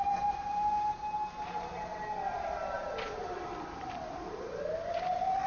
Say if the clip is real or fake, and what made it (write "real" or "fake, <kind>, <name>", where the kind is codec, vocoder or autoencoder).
real